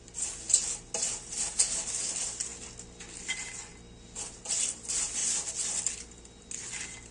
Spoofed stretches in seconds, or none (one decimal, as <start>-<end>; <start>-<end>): 5.2-5.8